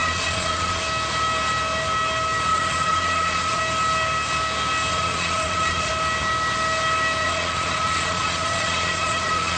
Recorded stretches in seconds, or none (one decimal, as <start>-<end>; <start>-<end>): 0.8-2.5; 3.6-4.9; 5.9-7.2

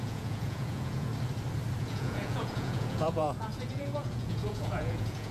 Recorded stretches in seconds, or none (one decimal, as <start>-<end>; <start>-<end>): 1.1-1.8

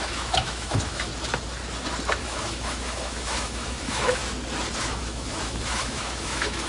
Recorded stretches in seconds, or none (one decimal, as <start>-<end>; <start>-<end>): 1.1-2.2; 4.2-4.8

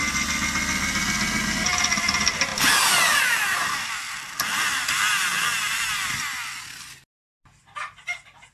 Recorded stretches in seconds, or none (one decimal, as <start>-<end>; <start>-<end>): 0.0-8.5

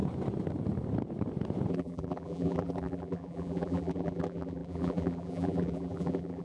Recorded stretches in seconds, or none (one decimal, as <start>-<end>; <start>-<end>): 0.0-1.7

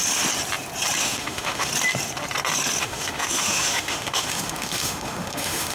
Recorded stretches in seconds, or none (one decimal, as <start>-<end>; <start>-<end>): 0.0-1.0; 1.7-2.8